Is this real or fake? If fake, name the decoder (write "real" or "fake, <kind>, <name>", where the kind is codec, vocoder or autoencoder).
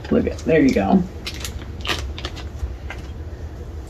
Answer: real